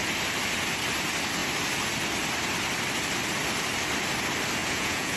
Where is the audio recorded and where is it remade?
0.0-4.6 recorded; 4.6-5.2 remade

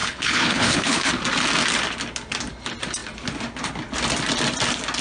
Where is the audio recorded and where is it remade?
0.0-1.1 remade; 1.1-5.0 recorded

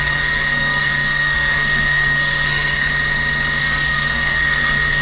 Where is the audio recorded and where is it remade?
0.0-2.9 remade; 2.9-3.6 recorded; 3.6-5.0 remade

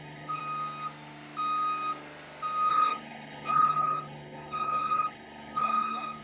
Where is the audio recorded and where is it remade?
0.0-0.4 remade; 0.4-2.7 recorded; 2.7-6.2 remade

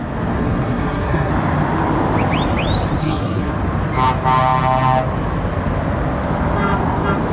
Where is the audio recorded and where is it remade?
0.0-0.4 recorded; 0.4-1.3 remade; 1.3-3.0 recorded; 3.0-3.5 remade; 3.5-7.3 recorded

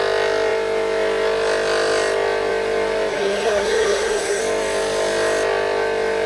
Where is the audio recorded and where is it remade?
0.0-3.1 recorded; 3.1-4.4 remade; 4.4-6.3 recorded

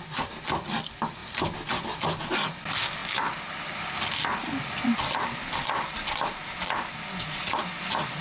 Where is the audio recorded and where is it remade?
0.0-8.2 recorded

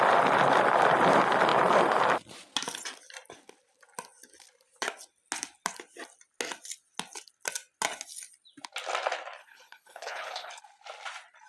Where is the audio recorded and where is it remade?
0.0-9.4 recorded; 9.4-10.5 remade; 10.5-11.5 recorded